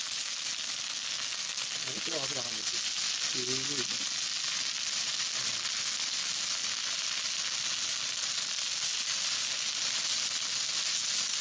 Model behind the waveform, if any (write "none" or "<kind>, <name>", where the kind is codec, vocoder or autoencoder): none